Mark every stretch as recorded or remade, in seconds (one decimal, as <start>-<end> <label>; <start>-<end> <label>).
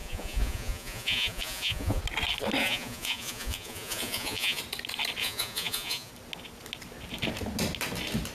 0.0-2.0 remade; 2.0-2.6 recorded; 2.6-4.6 remade; 4.6-5.2 recorded; 5.2-6.1 remade; 6.1-8.3 recorded